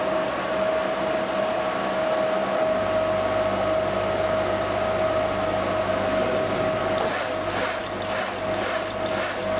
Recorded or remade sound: recorded